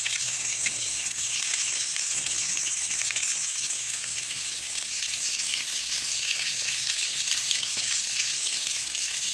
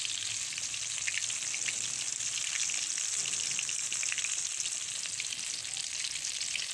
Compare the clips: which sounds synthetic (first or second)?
first